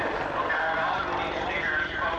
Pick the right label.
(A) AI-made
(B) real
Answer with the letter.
B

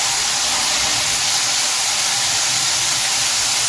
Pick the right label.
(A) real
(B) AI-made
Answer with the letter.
A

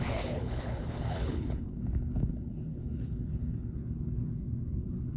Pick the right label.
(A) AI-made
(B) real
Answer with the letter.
A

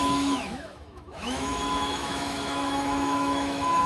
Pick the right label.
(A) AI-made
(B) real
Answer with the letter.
A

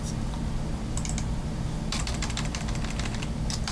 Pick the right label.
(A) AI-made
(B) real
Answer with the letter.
B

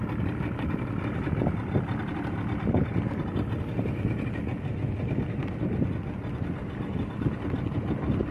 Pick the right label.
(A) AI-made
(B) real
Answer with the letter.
B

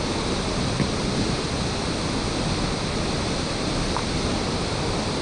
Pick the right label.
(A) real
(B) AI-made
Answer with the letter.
A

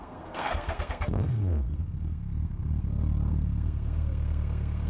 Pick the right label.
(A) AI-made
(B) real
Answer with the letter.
A